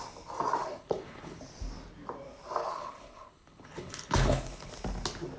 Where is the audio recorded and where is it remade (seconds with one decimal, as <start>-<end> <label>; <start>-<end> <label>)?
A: 0.0-0.6 recorded; 0.6-1.4 remade; 1.4-2.6 recorded; 2.6-4.7 remade; 4.7-5.4 recorded